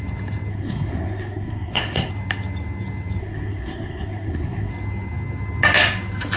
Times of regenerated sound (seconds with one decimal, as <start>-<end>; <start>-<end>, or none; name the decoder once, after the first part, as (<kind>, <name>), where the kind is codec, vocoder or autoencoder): 0.5-2.1 (codec, SNAC); 3.2-4.7